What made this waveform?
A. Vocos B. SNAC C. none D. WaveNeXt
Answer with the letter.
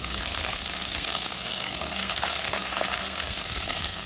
B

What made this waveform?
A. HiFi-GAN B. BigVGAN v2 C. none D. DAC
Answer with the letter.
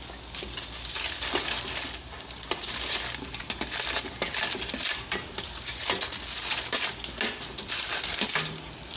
C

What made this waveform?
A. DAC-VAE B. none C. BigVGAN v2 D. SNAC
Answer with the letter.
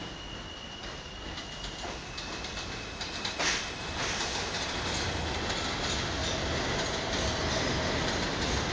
B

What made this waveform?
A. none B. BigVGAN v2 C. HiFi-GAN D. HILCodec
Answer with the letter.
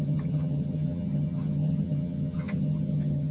C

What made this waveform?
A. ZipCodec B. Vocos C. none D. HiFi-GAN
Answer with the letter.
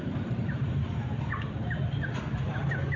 C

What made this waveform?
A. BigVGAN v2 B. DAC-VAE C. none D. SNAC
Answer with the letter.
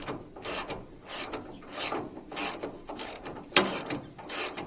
A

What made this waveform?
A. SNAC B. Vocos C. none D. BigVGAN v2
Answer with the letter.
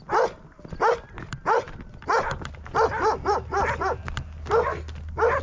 C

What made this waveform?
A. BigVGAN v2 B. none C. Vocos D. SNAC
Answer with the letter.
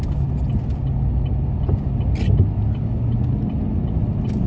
B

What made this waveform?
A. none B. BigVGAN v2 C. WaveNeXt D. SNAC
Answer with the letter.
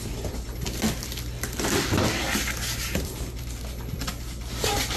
A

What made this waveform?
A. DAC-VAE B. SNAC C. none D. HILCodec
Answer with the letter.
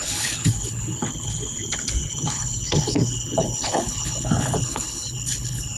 D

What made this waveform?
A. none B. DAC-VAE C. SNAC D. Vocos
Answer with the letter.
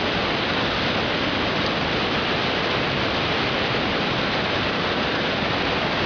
A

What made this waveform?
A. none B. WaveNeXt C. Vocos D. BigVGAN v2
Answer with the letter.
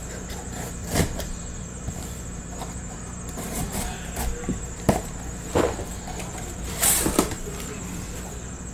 D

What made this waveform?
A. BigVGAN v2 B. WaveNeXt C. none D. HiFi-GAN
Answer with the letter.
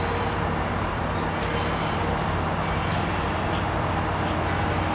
C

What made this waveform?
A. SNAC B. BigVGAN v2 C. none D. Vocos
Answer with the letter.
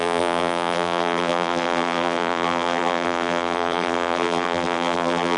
B